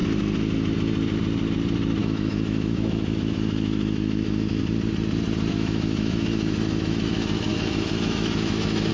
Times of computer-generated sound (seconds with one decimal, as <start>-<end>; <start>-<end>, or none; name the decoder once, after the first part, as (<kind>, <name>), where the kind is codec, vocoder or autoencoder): 2.0-4.6 (autoencoder, DAC-VAE); 5.5-8.9